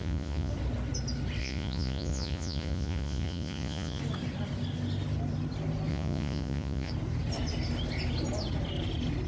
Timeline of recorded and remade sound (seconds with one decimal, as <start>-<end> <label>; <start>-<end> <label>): 0.0-0.5 remade; 0.5-1.4 recorded; 1.4-4.0 remade; 4.0-5.9 recorded; 5.9-6.9 remade; 6.9-9.3 recorded